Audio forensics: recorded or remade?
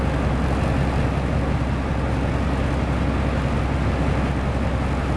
recorded